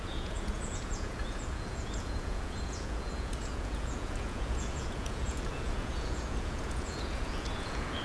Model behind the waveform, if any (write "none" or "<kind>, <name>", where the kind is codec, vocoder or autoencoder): vocoder, Vocos